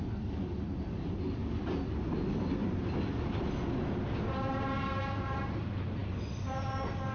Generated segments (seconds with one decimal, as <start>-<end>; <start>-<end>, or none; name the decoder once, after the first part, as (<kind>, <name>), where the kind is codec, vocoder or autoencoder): none